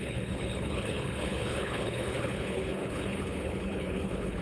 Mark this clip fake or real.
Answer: fake